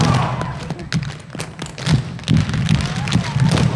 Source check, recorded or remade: recorded